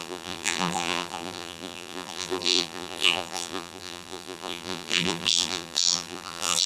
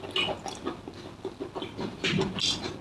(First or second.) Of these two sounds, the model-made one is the first